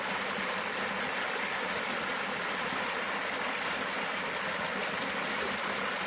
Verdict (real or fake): real